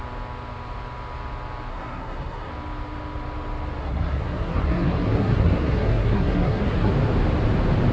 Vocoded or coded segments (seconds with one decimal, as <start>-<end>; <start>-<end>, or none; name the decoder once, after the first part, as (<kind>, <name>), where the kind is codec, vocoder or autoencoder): 1.7-2.5 (codec, SNAC); 3.8-6.9